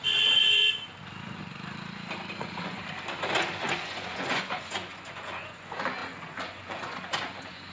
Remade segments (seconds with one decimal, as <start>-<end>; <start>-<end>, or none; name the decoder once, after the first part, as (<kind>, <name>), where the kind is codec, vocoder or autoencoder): 0.0-0.6 (vocoder, Vocos); 2.4-2.8; 3.8-7.7